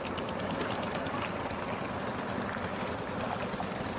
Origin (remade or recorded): recorded